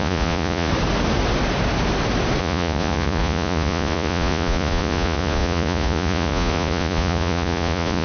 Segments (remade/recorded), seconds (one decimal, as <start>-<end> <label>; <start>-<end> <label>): 0.0-0.7 remade; 0.7-2.4 recorded; 2.4-8.0 remade